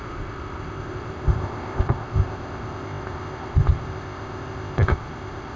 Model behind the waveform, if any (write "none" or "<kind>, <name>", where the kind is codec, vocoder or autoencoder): codec, ZipCodec